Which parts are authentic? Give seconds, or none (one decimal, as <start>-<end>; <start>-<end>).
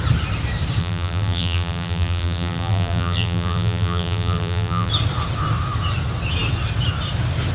0.0-0.8; 4.9-7.5